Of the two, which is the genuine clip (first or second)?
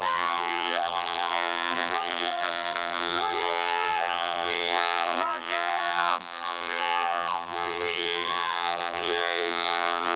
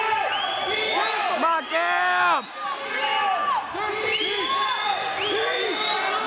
second